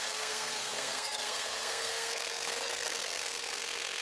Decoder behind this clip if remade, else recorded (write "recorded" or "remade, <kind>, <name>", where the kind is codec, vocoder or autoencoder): remade, codec, SNAC